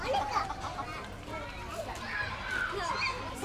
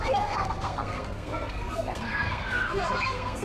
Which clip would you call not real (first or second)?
second